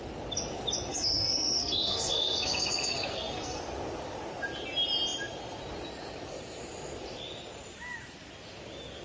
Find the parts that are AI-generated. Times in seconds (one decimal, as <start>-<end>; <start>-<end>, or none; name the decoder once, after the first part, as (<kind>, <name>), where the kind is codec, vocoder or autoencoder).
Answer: 0.9-3.6 (codec, SNAC)